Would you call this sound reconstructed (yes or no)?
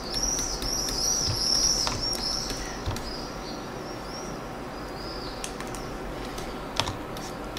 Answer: no